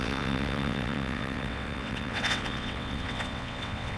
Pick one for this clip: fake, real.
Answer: fake